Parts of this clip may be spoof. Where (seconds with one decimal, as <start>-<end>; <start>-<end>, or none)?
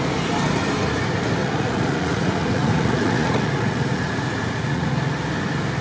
1.4-4.9